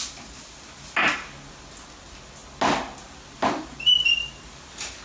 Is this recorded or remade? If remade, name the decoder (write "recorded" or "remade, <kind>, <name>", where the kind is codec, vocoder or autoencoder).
recorded